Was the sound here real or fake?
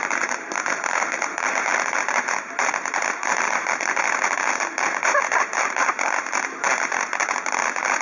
fake